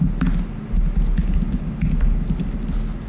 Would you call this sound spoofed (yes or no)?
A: no